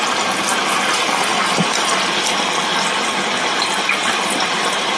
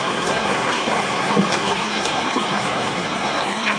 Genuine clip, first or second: first